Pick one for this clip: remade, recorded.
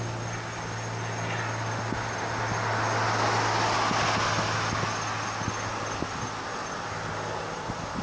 recorded